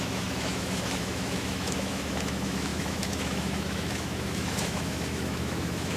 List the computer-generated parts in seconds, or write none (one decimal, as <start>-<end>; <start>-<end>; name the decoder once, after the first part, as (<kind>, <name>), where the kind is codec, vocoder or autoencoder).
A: 0.0-6.0 (autoencoder, DAC-VAE)